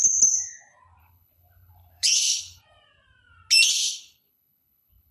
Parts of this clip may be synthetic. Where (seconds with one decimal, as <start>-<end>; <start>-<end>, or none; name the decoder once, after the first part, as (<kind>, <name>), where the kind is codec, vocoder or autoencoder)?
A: 1.0-2.6 (codec, HILCodec); 3.8-5.1